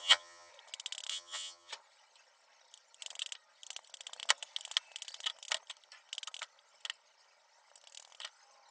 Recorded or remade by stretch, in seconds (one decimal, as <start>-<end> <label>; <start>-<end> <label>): 0.0-0.5 remade; 0.5-1.1 recorded; 1.1-1.7 remade; 1.7-8.7 recorded